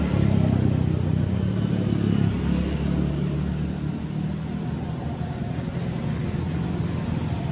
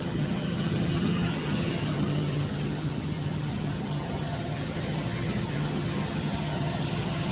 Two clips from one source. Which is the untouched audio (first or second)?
first